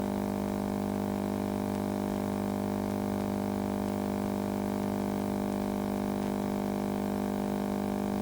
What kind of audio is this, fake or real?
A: real